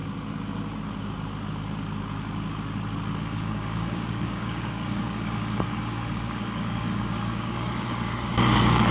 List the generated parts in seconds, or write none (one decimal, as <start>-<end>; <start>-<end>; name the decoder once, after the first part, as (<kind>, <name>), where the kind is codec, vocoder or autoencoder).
3.2-8.9 (codec, DAC)